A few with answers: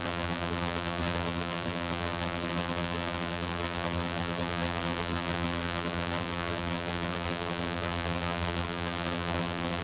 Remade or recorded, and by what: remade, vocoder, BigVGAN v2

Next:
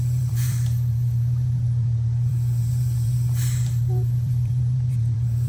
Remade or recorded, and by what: remade, vocoder, BigVGAN v2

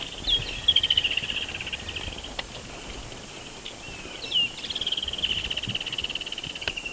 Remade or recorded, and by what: recorded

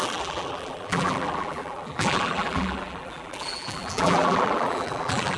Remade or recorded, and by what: remade, vocoder, BigVGAN v2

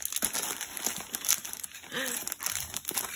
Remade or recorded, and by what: recorded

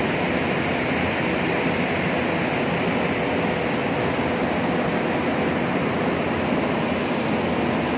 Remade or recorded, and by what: recorded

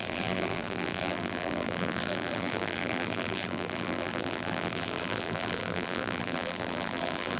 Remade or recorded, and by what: remade, vocoder, BigVGAN v2